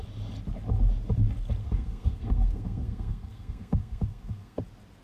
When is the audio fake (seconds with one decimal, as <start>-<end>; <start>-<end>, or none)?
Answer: 1.6-4.6